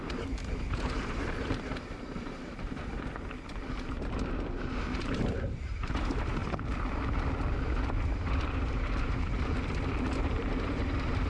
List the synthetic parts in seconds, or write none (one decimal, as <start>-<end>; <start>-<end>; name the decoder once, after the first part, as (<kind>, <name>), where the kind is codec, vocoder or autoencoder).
0.0-2.9 (vocoder, BigVGAN v2); 5.0-6.4; 8.1-9.5; 10.4-11.3